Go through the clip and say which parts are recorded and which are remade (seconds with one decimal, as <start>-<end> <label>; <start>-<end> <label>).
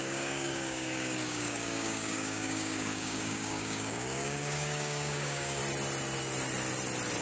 0.0-5.6 remade; 5.6-7.2 recorded